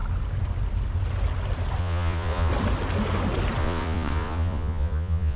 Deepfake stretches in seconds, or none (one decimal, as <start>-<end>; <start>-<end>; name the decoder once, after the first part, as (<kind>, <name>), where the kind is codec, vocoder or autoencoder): 1.8-2.5 (vocoder, Vocos); 3.6-5.4